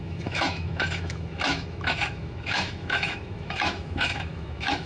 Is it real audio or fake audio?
fake